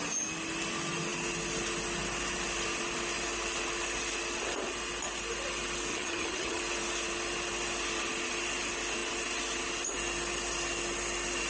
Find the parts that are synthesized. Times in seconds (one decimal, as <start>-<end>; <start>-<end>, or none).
5.9-6.6